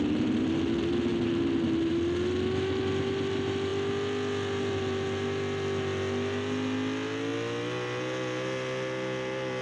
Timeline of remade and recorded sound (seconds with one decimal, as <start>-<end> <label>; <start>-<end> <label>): 0.0-9.6 recorded